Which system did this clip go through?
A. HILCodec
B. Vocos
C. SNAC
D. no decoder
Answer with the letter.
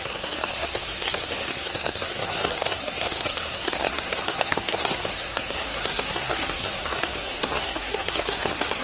C